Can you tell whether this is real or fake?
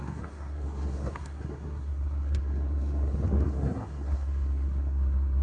fake